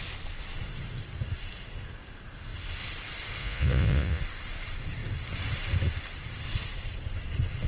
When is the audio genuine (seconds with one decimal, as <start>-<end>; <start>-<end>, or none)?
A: 0.0-3.4; 4.2-7.7